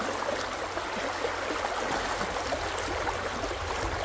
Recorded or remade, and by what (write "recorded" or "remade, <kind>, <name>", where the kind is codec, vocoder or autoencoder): recorded